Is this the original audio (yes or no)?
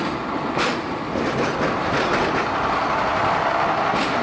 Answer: yes